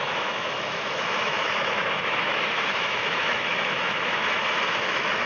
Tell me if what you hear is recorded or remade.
remade